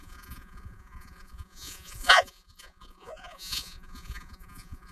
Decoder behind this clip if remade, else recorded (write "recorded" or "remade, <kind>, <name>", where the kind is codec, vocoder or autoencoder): remade, vocoder, Vocos